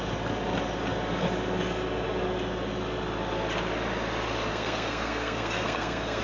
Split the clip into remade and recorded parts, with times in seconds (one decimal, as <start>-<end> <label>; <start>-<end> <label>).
0.0-4.5 recorded; 4.5-6.2 remade